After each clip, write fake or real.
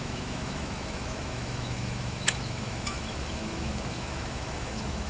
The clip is fake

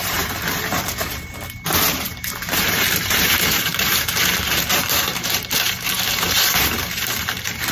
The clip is fake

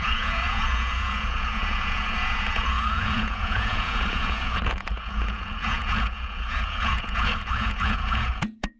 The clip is fake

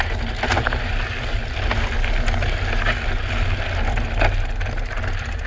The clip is real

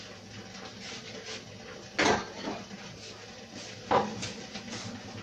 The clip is real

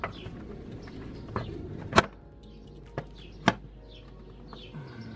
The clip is real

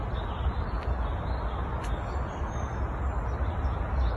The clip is real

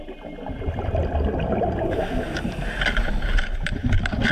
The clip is real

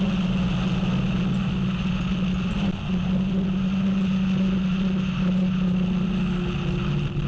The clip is real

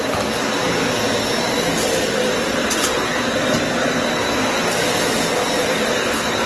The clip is real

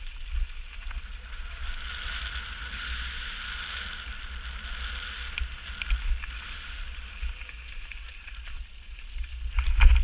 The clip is real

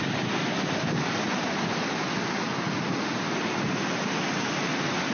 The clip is real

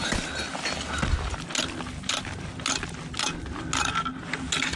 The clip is real